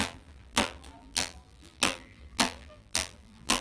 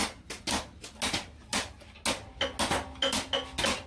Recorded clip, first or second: second